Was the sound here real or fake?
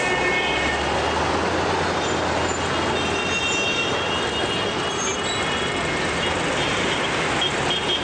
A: real